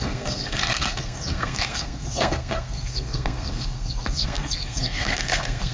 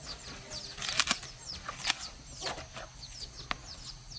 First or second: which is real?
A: second